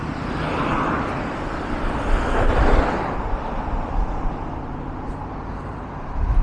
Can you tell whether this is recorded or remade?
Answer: recorded